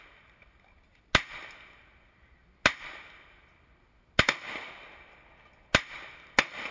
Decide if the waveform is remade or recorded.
recorded